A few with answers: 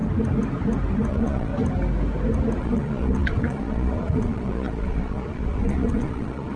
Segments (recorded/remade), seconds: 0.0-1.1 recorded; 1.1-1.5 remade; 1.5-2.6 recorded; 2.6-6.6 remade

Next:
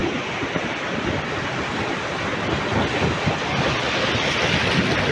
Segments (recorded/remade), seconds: 0.0-2.9 remade; 2.9-5.1 recorded

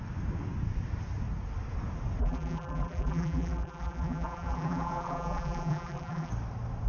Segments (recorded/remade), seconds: 0.0-2.2 recorded; 2.2-6.3 remade; 6.3-6.9 recorded

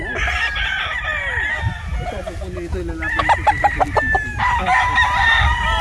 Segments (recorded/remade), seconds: 0.0-5.8 recorded

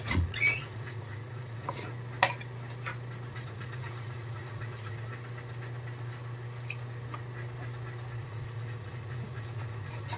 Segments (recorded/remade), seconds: 0.0-1.9 remade; 1.9-3.3 recorded; 3.3-5.1 remade; 5.1-8.2 recorded; 8.2-10.2 remade

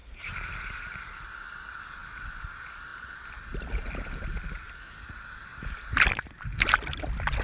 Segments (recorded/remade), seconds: 0.0-7.4 recorded